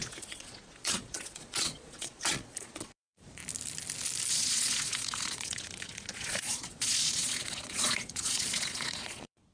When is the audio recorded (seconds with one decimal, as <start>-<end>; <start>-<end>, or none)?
3.4-4.3